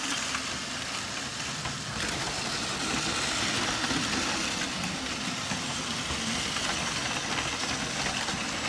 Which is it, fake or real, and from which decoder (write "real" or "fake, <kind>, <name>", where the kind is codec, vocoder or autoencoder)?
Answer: real